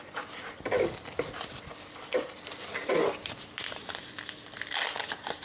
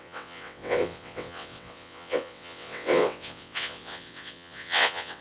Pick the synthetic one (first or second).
second